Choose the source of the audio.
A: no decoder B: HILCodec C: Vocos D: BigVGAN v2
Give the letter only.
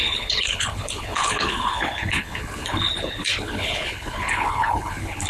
B